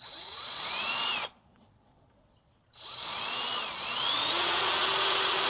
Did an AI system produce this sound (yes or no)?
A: yes